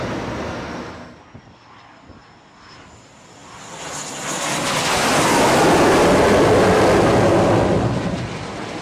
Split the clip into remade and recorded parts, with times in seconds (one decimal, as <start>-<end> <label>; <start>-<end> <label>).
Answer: 0.0-8.8 recorded

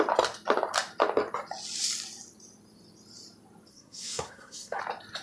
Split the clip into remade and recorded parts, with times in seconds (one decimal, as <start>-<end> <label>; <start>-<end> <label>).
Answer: 0.0-3.7 recorded; 3.7-4.8 remade; 4.8-5.2 recorded

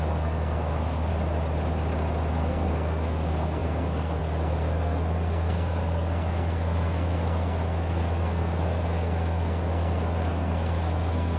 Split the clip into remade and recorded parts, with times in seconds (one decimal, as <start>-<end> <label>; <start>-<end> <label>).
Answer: 0.0-1.1 remade; 1.1-2.3 recorded; 2.3-11.4 remade

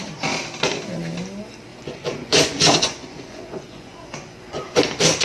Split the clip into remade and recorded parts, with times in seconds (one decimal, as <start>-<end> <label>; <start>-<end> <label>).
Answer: 0.0-1.7 recorded; 1.7-4.8 remade; 4.8-5.2 recorded

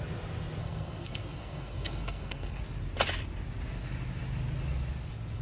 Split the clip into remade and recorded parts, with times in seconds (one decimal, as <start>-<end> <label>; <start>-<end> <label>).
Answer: 0.0-0.6 recorded; 0.6-2.6 remade; 2.6-5.4 recorded

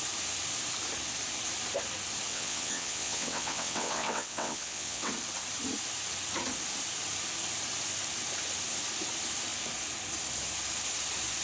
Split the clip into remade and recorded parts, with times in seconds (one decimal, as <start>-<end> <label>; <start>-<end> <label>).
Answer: 0.0-2.3 recorded; 2.3-5.1 remade; 5.1-11.4 recorded

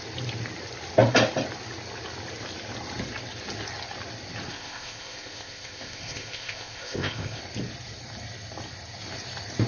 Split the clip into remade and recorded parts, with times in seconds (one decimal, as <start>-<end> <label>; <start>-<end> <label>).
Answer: 0.0-4.5 recorded; 4.5-7.4 remade; 7.4-9.7 recorded

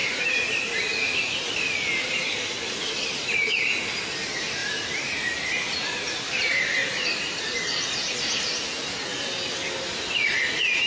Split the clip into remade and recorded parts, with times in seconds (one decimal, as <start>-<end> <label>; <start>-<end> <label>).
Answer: 0.0-0.7 remade; 0.7-4.6 recorded; 4.6-5.5 remade; 5.5-6.8 recorded; 6.8-7.9 remade; 7.9-10.9 recorded